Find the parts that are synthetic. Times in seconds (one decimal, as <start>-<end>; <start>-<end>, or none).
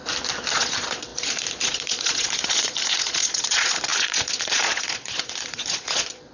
0.5-6.3